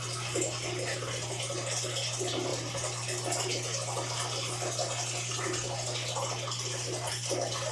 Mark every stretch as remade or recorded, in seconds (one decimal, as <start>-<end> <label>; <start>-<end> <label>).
0.0-7.7 recorded